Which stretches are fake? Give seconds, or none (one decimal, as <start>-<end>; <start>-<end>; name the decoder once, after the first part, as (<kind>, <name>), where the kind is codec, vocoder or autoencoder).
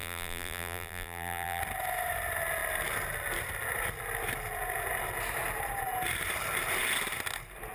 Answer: 0.0-1.6 (vocoder, BigVGAN v2)